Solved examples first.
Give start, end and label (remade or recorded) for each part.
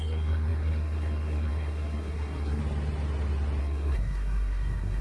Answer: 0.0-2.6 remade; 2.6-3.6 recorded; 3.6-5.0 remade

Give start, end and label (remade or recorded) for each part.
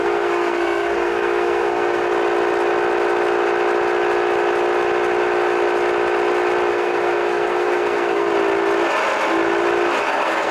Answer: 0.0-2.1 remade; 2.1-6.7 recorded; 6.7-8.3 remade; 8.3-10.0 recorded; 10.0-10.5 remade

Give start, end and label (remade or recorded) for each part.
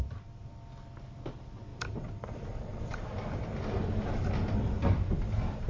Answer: 0.0-5.7 recorded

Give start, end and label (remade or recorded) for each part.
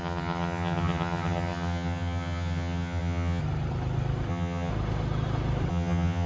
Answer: 0.0-3.4 remade; 3.4-4.3 recorded; 4.3-4.7 remade; 4.7-5.7 recorded; 5.7-6.3 remade